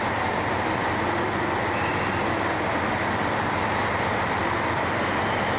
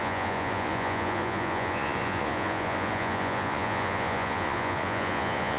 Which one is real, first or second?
first